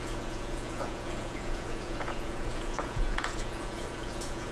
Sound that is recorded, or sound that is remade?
remade